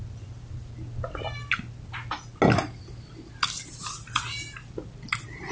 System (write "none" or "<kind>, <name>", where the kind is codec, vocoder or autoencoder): none